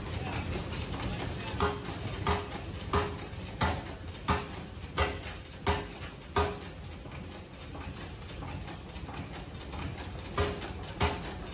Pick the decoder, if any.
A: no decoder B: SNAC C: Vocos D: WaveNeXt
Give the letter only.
A